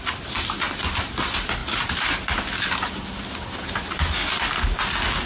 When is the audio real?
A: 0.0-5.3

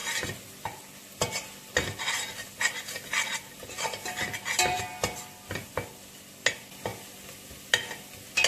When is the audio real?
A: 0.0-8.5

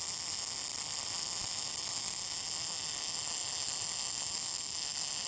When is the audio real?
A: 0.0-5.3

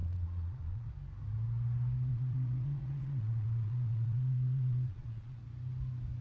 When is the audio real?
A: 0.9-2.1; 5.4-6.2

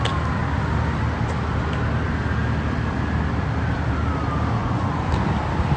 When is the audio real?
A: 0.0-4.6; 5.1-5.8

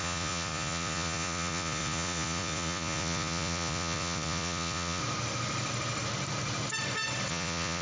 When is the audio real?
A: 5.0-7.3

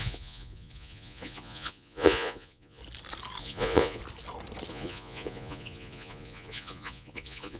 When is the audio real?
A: 2.8-3.4; 4.0-4.7